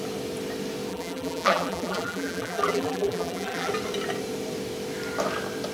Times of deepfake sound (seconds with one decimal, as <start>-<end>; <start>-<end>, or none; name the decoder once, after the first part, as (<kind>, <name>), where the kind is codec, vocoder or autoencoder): 0.9-3.7 (vocoder, BigVGAN v2)